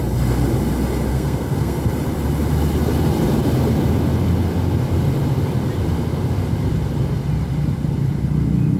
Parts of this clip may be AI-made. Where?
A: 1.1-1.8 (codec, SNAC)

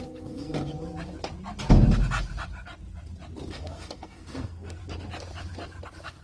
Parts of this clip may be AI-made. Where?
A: 0.0-0.7 (codec, SNAC); 3.5-4.8

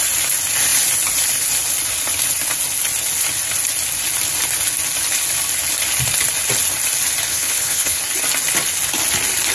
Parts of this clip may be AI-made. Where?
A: 7.3-8.0 (codec, HILCodec)